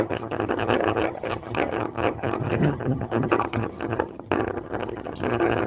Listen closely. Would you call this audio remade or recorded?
remade